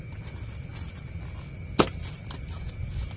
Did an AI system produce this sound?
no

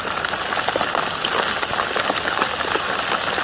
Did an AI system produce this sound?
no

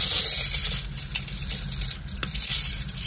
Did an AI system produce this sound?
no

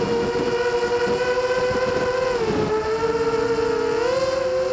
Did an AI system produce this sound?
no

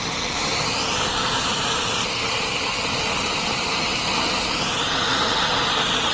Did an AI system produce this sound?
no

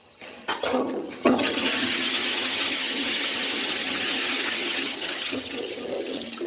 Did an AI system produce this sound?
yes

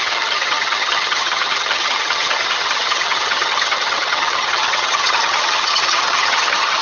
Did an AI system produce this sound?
yes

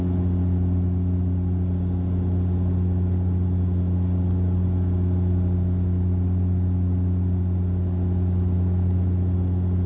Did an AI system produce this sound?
no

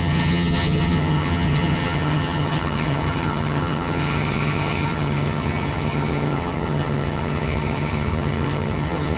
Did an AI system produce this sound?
yes